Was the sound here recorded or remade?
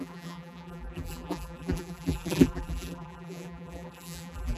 remade